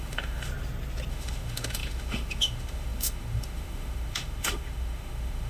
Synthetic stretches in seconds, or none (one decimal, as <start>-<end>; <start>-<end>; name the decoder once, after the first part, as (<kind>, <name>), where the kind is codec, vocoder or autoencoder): 0.0-0.5 (autoencoder, DAC-VAE); 1.1-5.5